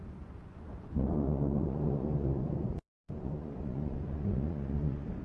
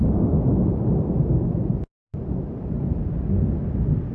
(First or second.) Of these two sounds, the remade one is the first